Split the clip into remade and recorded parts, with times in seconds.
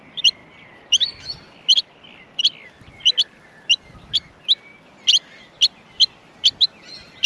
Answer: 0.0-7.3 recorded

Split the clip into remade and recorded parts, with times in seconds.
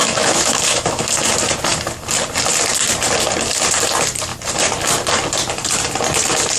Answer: 0.0-1.1 remade; 1.1-6.6 recorded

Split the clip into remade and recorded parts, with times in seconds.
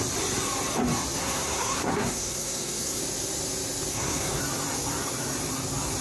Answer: 0.0-1.2 recorded; 1.2-3.0 remade; 3.0-3.9 recorded; 3.9-4.4 remade; 4.4-6.0 recorded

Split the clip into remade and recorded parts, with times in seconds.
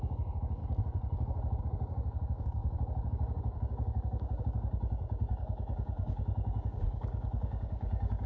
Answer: 0.0-0.6 remade; 0.6-1.6 recorded; 1.6-8.3 remade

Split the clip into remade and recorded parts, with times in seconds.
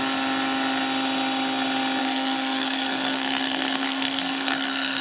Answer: 0.0-2.0 recorded; 2.0-5.0 remade